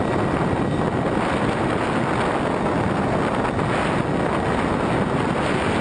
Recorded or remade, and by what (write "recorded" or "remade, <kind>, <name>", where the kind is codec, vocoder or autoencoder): recorded